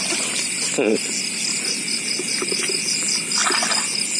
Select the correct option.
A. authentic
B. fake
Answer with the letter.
A